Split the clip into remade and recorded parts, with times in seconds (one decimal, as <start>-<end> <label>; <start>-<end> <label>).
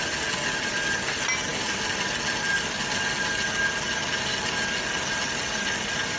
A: 0.0-6.2 recorded